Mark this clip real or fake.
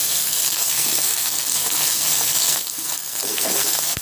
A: fake